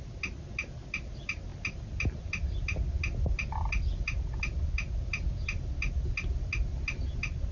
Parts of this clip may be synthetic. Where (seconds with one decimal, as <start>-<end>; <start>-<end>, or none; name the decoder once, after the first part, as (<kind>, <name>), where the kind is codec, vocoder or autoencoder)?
none

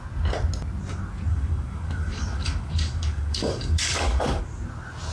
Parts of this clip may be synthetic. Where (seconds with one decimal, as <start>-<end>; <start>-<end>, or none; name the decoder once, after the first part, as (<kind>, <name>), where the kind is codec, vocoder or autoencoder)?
1.3-4.4 (codec, DAC)

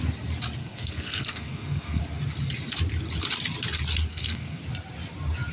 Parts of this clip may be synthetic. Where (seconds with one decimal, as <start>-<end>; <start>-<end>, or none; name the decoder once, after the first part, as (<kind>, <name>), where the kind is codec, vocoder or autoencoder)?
0.6-2.0 (codec, SNAC); 4.1-4.6

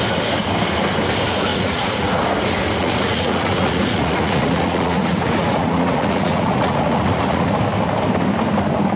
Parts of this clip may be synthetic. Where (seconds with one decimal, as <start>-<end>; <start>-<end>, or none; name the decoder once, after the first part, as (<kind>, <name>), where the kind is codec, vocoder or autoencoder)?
1.5-2.2 (vocoder, Vocos); 2.8-7.5

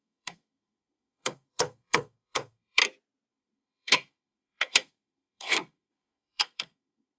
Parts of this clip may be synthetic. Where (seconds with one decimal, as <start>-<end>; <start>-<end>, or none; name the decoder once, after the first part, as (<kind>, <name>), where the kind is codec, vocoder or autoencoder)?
0.0-2.8 (codec, SNAC); 3.3-7.2

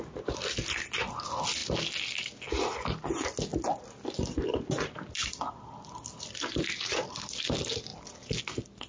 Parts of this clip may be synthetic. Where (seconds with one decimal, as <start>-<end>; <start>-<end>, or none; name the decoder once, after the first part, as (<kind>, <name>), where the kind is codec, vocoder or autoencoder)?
none

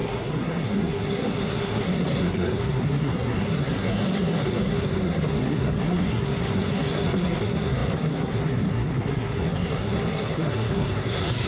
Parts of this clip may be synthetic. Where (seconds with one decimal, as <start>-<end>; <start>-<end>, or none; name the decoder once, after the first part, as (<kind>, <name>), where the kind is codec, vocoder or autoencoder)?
0.0-11.5 (codec, SNAC)

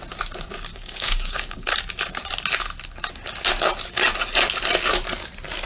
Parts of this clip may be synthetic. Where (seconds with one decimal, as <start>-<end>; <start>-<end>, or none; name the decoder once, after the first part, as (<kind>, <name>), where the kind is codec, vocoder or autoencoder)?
0.7-1.8 (codec, DAC)